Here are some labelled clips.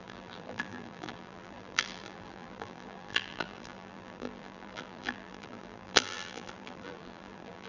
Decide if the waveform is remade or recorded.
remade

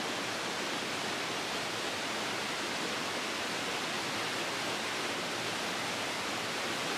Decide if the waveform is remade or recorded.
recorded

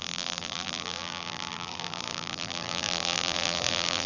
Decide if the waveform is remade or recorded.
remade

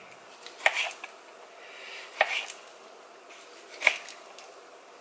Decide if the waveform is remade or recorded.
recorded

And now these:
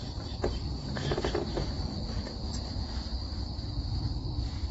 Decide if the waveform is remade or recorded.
remade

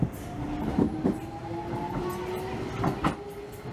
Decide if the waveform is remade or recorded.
recorded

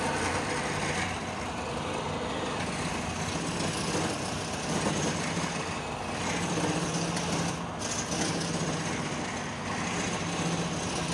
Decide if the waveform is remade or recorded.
recorded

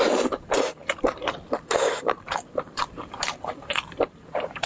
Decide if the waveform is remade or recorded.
remade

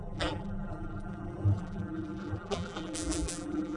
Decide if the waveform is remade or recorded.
remade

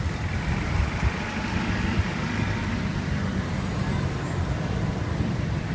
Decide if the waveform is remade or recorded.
remade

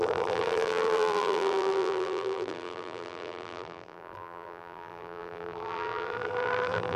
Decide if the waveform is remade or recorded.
remade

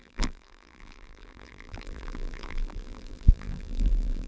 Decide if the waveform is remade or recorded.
remade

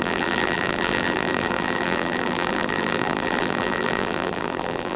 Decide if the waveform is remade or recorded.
remade